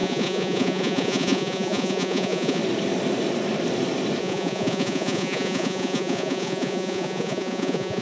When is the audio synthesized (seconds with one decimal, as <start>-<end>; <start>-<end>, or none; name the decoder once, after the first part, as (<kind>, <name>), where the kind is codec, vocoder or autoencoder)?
0.0-2.6 (vocoder, Vocos); 4.2-8.0